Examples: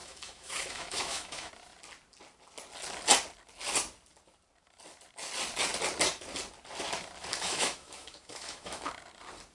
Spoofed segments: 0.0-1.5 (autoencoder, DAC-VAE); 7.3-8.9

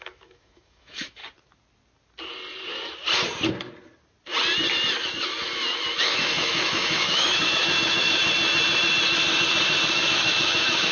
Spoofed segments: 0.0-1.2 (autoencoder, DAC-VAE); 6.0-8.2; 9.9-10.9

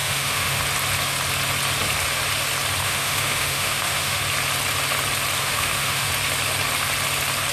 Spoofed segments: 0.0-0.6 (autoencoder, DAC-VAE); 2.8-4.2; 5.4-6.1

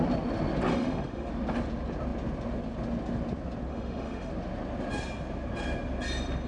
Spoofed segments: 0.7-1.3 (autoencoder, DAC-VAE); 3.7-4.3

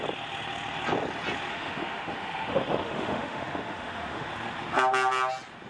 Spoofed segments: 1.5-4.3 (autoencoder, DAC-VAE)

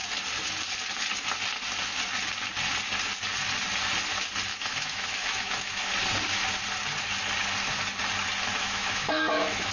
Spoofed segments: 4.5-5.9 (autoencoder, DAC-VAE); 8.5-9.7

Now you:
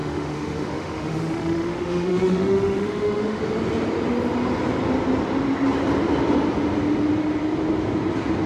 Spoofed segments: 0.0-3.4 (autoencoder, DAC-VAE)

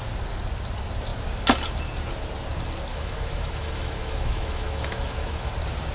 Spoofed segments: 2.9-5.5 (autoencoder, DAC-VAE)